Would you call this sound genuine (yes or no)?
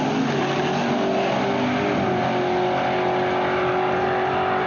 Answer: yes